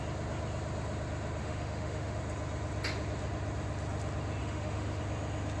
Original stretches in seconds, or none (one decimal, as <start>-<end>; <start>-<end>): 0.0-1.4; 2.2-4.4; 5.0-5.6